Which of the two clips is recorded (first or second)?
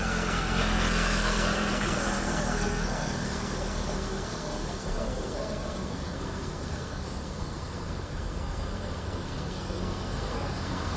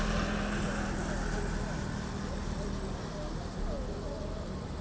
second